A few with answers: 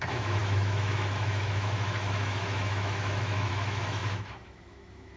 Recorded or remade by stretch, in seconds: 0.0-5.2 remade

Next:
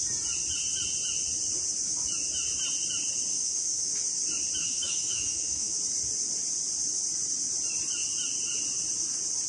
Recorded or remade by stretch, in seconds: 0.0-3.3 recorded; 3.3-3.9 remade; 3.9-4.6 recorded; 4.6-5.8 remade; 5.8-9.5 recorded

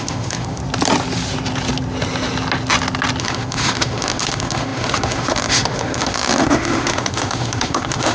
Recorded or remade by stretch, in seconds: 0.0-0.6 remade; 0.6-3.2 recorded; 3.2-8.1 remade

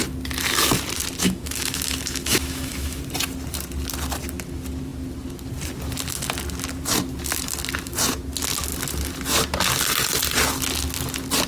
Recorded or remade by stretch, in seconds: 0.0-1.2 recorded; 1.2-3.0 remade; 3.0-11.5 recorded

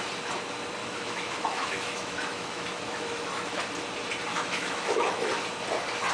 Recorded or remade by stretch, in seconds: 0.0-0.8 recorded; 0.8-3.6 remade; 3.6-4.3 recorded; 4.3-5.3 remade; 5.3-6.1 recorded

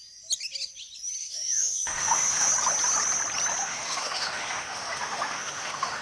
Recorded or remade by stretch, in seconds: 0.0-1.2 recorded; 1.2-2.5 remade; 2.5-3.6 recorded; 3.6-6.0 remade

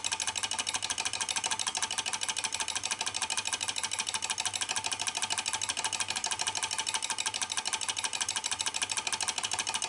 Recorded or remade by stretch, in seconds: 0.0-9.9 recorded

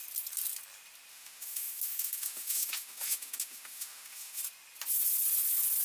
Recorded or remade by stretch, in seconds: 0.0-1.1 recorded; 1.1-4.4 remade; 4.4-5.8 recorded